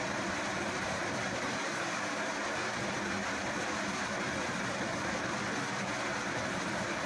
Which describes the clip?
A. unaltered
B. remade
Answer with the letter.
A